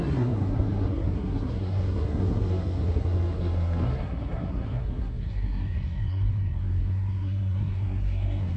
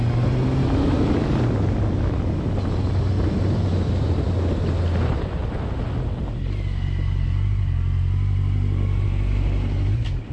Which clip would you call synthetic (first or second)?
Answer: first